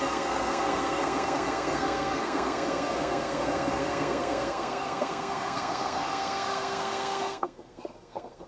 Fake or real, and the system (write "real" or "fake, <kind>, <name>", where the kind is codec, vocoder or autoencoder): fake, codec, SNAC